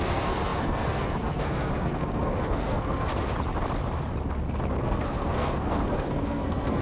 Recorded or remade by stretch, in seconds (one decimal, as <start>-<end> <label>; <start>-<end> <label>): 0.0-3.1 remade; 3.1-4.8 recorded; 4.8-6.8 remade